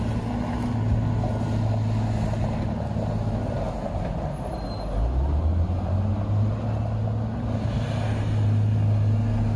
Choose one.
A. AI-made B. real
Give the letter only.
B